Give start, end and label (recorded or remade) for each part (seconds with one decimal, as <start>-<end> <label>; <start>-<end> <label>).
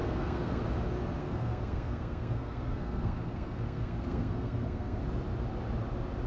0.0-0.6 remade; 0.6-1.2 recorded; 1.2-5.0 remade; 5.0-6.3 recorded